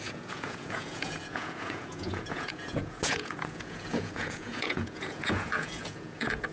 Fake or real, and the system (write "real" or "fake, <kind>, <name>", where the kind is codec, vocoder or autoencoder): fake, vocoder, Vocos